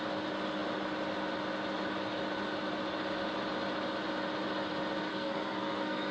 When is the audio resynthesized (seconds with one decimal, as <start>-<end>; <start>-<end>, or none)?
5.1-6.1